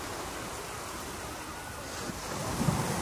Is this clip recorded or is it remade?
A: recorded